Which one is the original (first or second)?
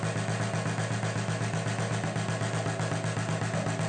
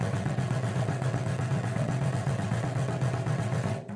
first